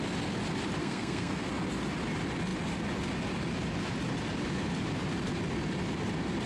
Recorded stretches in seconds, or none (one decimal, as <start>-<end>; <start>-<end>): 0.0-0.8; 1.5-6.5